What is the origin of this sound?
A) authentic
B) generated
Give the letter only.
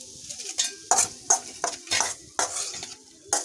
A